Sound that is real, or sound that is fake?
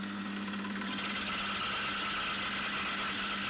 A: real